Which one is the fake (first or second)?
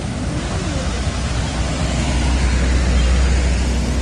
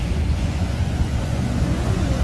second